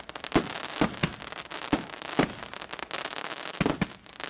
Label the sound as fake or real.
real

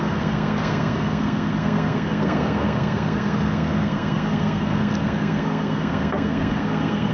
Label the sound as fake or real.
fake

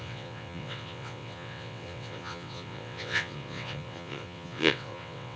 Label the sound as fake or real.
fake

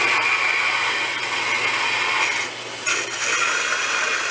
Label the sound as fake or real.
real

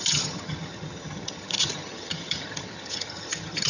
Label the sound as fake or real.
fake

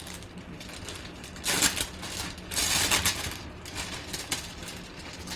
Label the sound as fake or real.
real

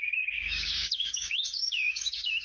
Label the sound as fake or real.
fake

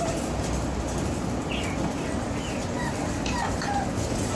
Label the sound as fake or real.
real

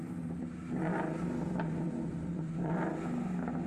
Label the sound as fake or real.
real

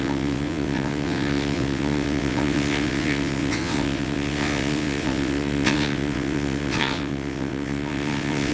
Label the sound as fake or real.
fake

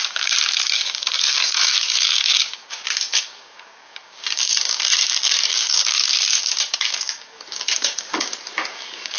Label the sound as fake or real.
fake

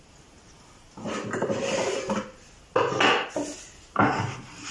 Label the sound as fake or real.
real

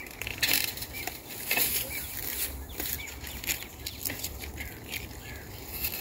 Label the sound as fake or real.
real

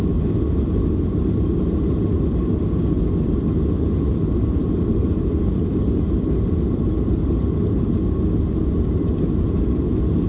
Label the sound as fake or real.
real